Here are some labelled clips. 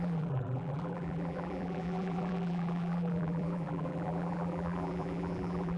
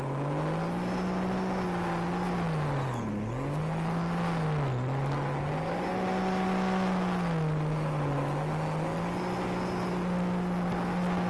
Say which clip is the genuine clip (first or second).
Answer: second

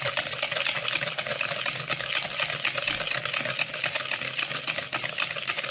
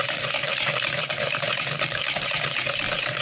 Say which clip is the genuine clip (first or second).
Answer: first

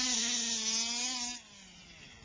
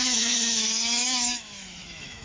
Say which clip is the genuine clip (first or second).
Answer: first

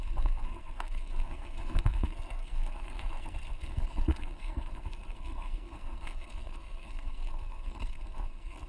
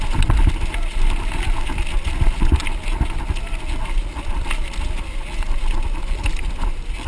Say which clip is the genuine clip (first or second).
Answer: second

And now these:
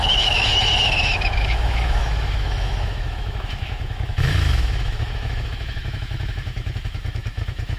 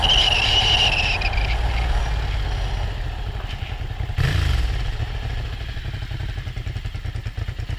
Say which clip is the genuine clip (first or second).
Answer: second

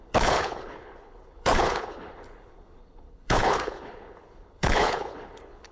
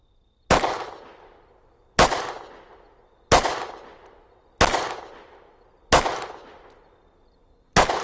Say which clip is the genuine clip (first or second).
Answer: second